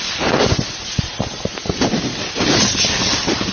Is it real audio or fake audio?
real